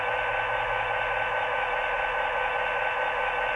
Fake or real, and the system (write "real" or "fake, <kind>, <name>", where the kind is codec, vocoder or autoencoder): real